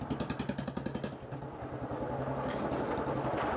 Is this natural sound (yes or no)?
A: yes